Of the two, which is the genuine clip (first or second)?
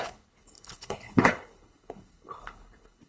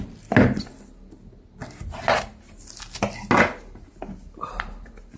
second